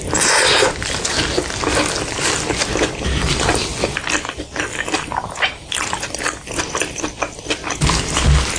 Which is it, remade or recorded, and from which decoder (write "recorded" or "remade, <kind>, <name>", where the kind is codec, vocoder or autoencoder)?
recorded